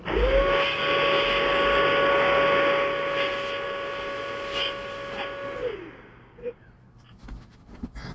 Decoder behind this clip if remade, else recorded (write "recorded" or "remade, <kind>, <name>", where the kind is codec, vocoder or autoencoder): recorded